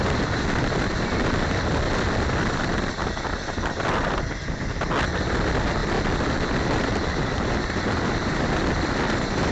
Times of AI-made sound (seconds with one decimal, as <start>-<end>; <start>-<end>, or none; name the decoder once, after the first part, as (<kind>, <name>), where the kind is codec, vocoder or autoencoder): none